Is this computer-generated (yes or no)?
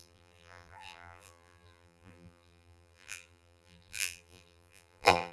yes